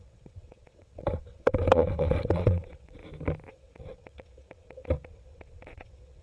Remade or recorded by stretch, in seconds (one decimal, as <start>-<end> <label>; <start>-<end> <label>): 0.0-3.0 remade; 3.0-3.5 recorded; 3.5-6.2 remade